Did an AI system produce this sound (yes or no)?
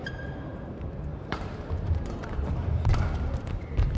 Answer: yes